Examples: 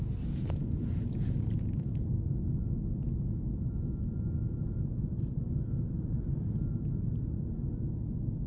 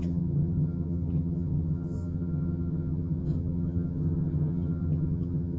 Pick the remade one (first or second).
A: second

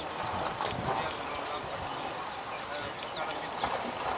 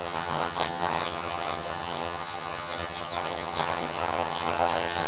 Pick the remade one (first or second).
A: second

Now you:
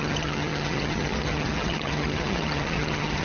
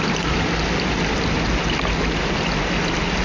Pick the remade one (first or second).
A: first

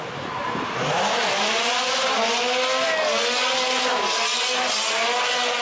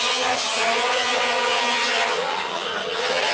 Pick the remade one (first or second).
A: second